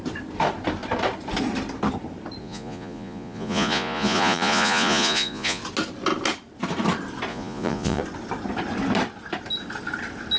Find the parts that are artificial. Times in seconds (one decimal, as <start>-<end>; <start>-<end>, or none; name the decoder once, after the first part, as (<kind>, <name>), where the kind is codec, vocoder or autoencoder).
2.4-5.6 (vocoder, Vocos); 7.3-8.0